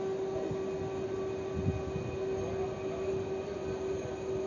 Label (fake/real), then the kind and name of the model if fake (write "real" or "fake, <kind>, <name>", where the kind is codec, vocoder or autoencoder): real